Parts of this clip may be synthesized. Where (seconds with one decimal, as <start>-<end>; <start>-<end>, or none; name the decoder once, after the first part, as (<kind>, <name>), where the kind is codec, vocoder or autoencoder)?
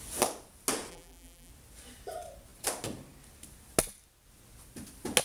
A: 0.9-1.5 (vocoder, BigVGAN v2)